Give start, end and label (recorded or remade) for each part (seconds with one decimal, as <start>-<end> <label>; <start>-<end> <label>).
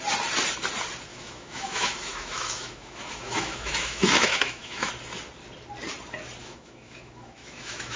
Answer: 0.0-1.1 recorded; 1.1-4.9 remade; 4.9-6.4 recorded; 6.4-8.0 remade